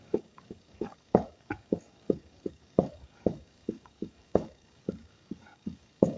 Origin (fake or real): fake